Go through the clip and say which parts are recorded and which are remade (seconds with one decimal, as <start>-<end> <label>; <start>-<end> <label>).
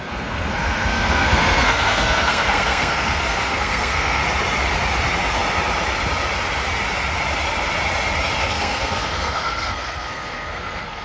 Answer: 0.0-4.2 remade; 4.2-8.4 recorded; 8.4-11.0 remade